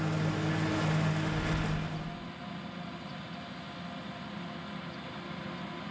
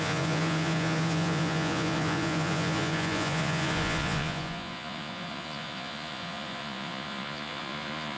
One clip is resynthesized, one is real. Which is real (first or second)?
first